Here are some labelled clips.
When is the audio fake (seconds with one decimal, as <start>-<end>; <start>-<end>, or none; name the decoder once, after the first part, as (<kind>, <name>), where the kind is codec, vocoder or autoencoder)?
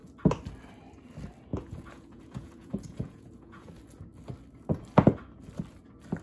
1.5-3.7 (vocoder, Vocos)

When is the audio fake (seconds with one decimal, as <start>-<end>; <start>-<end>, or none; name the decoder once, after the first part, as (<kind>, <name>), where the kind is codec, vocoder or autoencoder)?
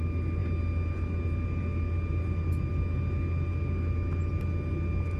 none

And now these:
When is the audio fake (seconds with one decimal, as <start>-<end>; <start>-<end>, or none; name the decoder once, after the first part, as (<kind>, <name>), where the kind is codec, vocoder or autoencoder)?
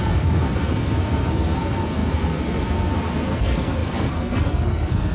0.0-5.1 (codec, SNAC)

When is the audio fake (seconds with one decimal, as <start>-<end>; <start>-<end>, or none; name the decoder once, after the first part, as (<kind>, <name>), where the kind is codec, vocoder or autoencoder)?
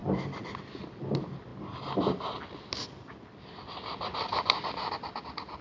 none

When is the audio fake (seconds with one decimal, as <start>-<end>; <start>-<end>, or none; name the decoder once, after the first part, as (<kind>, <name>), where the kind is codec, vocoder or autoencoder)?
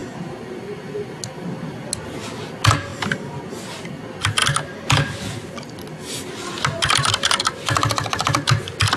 none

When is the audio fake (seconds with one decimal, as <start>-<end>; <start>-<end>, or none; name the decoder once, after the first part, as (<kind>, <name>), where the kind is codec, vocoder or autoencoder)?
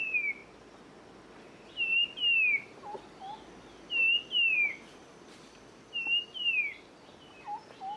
none